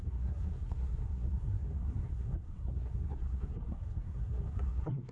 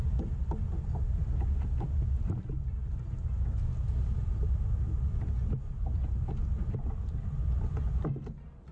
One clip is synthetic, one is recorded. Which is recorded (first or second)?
second